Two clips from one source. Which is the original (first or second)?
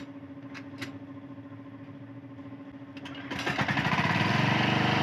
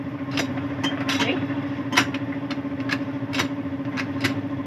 first